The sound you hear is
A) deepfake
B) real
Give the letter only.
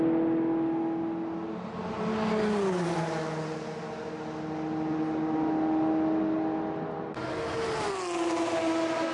B